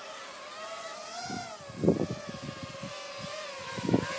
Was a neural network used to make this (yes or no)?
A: no